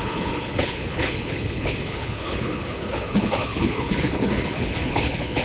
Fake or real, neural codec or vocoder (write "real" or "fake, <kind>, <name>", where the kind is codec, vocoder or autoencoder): fake, codec, HILCodec